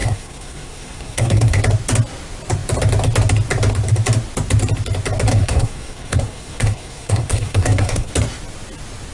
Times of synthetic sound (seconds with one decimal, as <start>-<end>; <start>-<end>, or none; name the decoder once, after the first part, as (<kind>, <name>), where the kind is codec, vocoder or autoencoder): 0.0-1.6 (codec, SNAC); 5.3-8.1